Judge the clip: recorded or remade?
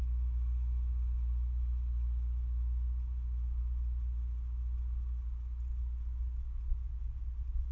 recorded